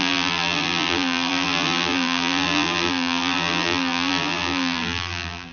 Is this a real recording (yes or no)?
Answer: no